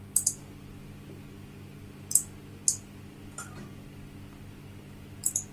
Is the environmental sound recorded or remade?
recorded